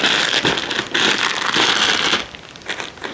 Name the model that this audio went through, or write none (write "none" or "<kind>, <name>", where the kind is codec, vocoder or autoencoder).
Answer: none